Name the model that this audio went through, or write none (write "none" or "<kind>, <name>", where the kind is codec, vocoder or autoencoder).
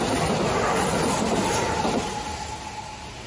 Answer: none